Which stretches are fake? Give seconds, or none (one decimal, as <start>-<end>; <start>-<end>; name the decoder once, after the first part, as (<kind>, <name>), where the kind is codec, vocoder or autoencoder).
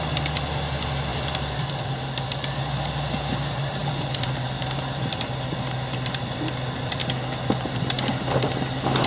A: 1.1-2.6 (vocoder, BigVGAN v2); 3.8-5.2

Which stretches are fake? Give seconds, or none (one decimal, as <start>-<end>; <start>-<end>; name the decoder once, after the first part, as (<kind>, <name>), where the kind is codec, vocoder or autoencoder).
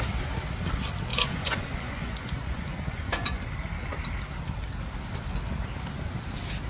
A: 1.1-3.4 (vocoder, Vocos)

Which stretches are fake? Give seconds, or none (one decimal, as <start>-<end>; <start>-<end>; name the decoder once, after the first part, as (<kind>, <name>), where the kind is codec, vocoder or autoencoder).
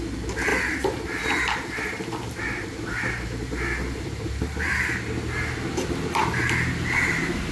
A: 0.5-5.0 (vocoder, BigVGAN v2); 6.2-7.5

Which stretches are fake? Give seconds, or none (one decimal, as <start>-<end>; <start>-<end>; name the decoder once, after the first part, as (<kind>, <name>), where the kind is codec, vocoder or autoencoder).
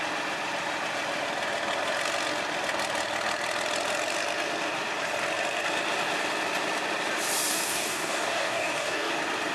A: 7.5-9.1 (codec, DAC)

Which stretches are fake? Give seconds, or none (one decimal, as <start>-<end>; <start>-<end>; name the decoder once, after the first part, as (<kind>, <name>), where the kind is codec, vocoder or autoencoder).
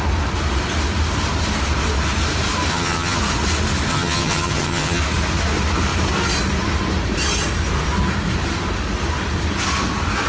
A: 2.7-3.2 (vocoder, HiFi-GAN); 3.9-5.0